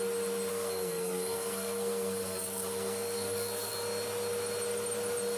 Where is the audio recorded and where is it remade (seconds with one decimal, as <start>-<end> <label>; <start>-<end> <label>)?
0.0-0.5 recorded; 0.5-3.7 remade; 3.7-5.4 recorded